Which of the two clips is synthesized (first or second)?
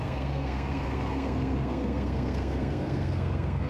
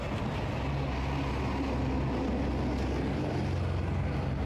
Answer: first